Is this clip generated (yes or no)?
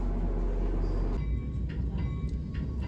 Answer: no